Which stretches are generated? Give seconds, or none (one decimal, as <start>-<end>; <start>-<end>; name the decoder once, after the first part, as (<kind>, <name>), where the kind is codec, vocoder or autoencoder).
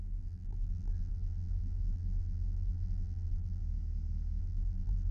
0.0-3.6 (vocoder, BigVGAN v2); 4.4-5.1